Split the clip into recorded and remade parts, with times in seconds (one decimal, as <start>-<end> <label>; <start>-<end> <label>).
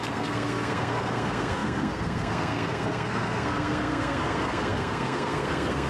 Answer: 0.0-5.9 remade